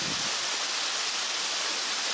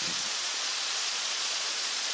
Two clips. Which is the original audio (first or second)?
first